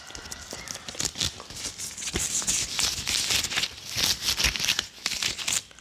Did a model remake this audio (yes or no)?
no